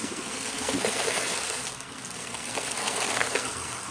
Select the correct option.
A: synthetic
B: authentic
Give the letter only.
A